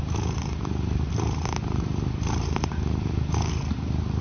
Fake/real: fake